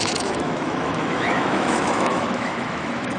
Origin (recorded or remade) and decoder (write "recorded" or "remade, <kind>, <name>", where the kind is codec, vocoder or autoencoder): remade, autoencoder, DAC-VAE